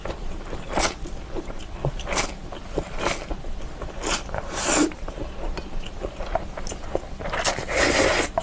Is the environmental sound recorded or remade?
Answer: recorded